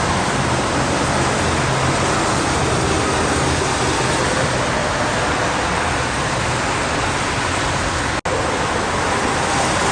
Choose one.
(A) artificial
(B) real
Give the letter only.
B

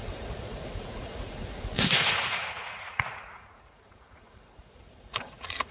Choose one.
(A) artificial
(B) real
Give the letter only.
A